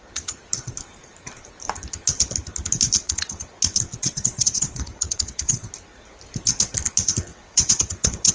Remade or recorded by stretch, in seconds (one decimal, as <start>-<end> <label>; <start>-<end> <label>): 0.0-3.0 recorded; 3.0-3.5 remade; 3.5-4.0 recorded; 4.0-5.7 remade; 5.7-7.3 recorded; 7.3-8.3 remade